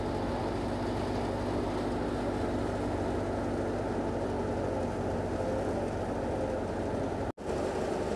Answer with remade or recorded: recorded